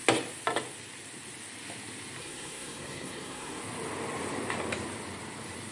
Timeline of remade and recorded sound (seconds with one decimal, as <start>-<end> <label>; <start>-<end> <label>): 0.0-2.2 recorded; 2.2-3.6 remade; 3.6-5.7 recorded